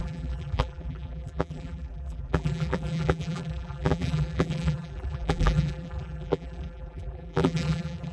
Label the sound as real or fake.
fake